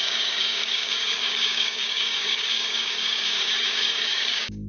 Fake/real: fake